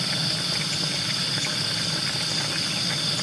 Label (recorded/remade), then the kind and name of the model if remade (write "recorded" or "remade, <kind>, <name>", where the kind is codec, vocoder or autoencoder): recorded